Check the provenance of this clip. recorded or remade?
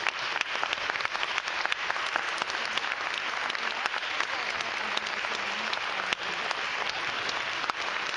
recorded